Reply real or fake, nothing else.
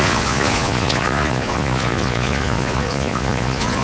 fake